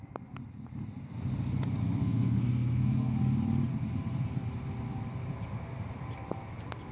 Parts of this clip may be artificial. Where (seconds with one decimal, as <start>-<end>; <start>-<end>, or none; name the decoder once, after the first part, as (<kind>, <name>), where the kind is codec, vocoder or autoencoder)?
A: 1.8-3.2 (codec, SNAC)